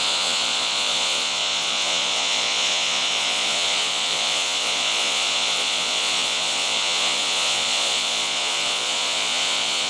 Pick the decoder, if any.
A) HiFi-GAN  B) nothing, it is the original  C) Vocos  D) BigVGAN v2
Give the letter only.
C